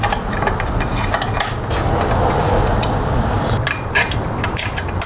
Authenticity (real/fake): real